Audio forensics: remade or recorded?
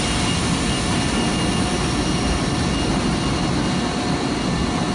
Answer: recorded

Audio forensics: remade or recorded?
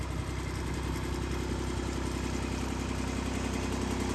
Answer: recorded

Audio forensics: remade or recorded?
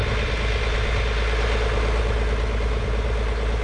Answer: recorded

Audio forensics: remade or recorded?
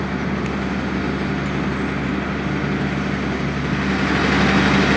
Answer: recorded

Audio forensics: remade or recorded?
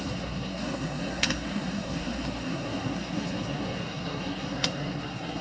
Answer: remade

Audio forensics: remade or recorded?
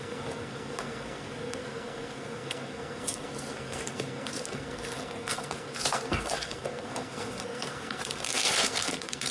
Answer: remade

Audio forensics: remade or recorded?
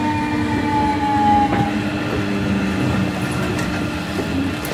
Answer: recorded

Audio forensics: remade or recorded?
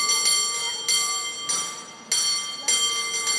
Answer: recorded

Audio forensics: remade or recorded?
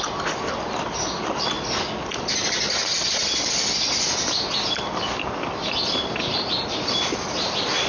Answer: recorded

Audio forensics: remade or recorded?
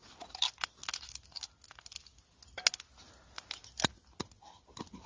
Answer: recorded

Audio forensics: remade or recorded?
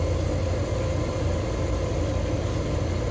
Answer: recorded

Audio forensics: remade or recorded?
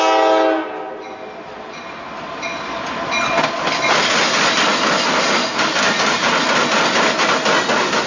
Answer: recorded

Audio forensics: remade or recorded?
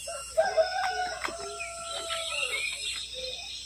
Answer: recorded